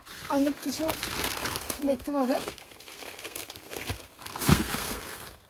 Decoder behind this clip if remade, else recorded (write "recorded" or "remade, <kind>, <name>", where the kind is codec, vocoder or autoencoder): remade, codec, SNAC